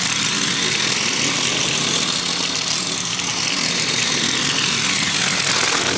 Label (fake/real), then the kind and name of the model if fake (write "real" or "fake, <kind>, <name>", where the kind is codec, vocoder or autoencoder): real